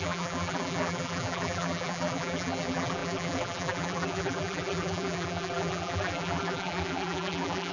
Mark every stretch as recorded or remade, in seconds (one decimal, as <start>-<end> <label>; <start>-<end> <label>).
0.0-7.7 remade

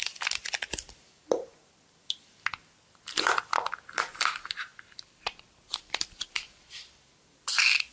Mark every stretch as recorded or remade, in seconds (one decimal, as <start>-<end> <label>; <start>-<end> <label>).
0.0-4.7 recorded; 4.7-6.7 remade; 6.7-7.9 recorded